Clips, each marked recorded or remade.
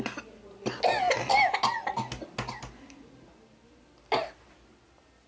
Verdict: recorded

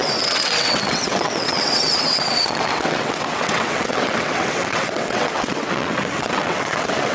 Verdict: remade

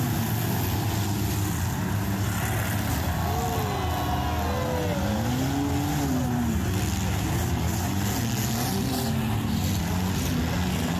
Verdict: recorded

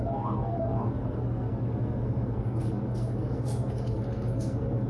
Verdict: remade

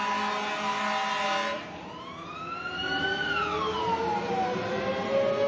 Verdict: recorded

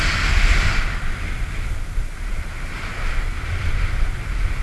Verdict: recorded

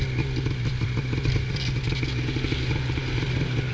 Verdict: recorded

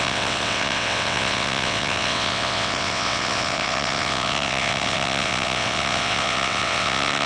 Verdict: remade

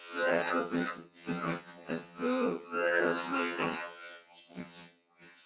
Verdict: remade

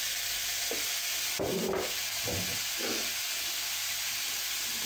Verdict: recorded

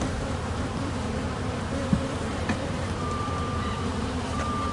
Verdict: remade